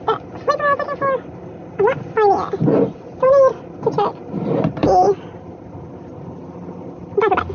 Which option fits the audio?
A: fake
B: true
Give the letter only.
B